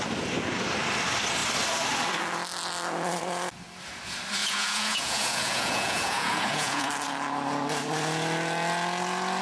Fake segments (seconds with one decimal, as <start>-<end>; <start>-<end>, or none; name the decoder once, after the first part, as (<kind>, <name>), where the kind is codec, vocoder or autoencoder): 4.4-6.9 (vocoder, Vocos)